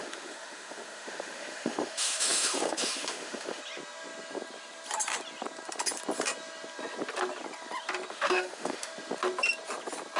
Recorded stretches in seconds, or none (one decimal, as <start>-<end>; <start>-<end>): 3.6-8.1; 8.9-10.2